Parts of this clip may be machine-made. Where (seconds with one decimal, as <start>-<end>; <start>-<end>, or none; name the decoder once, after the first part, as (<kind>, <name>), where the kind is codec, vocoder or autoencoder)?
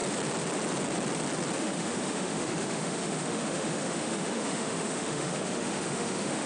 1.6-6.5 (autoencoder, DAC-VAE)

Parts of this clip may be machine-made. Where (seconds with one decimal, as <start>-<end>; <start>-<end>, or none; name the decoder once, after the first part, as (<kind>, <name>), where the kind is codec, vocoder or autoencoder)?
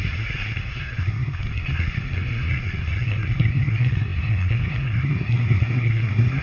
0.0-6.4 (codec, SNAC)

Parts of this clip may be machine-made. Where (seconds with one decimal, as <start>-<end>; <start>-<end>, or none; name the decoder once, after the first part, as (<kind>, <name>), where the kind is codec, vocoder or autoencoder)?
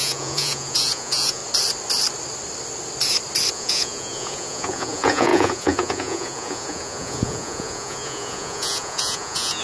0.0-1.4 (vocoder, Vocos); 3.5-9.6